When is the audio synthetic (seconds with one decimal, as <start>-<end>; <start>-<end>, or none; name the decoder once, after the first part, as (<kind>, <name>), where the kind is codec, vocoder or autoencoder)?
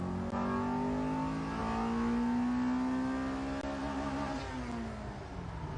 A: none